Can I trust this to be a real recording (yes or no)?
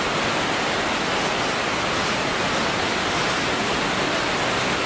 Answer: yes